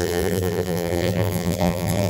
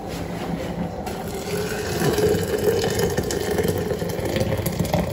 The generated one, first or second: first